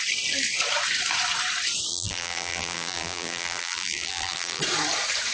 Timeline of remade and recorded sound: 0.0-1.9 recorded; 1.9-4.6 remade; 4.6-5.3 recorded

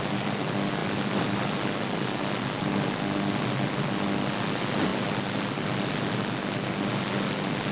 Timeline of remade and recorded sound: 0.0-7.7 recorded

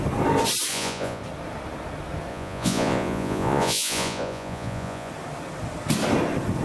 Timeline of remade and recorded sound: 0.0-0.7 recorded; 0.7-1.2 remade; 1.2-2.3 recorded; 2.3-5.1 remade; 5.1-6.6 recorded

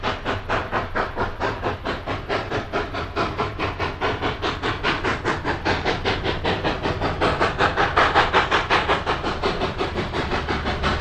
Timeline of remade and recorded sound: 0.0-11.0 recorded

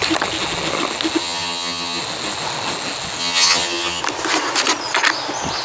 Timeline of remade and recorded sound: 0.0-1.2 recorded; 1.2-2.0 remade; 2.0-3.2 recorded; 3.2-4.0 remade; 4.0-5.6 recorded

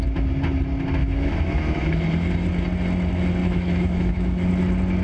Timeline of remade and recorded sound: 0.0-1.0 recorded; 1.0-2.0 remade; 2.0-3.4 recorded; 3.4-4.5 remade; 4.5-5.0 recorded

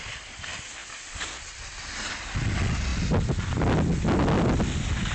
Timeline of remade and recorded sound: 0.0-5.1 recorded